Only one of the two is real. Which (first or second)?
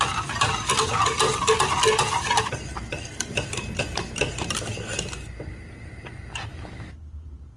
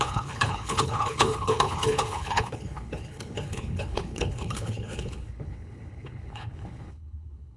first